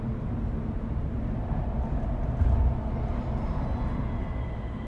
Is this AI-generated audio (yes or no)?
no